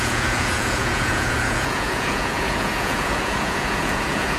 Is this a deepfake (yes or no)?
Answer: yes